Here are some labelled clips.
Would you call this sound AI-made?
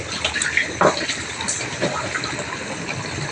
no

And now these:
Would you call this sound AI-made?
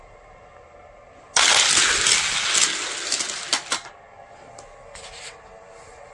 no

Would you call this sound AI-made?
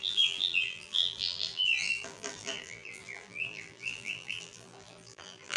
yes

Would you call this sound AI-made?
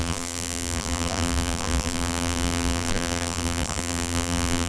yes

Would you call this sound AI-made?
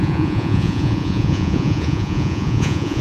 yes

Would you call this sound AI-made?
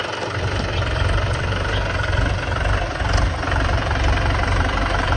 yes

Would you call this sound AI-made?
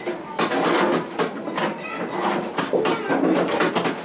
no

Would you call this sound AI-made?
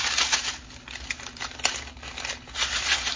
no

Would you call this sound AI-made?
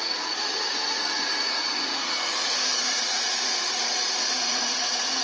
yes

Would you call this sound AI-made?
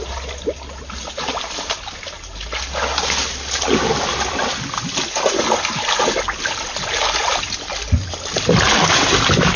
no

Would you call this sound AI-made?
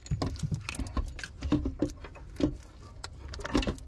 no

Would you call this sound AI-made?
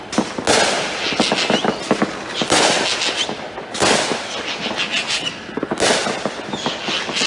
no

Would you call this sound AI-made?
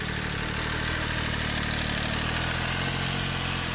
no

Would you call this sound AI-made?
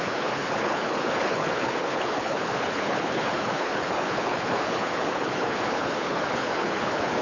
yes